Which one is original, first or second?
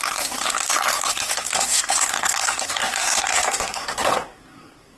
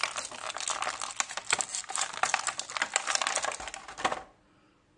second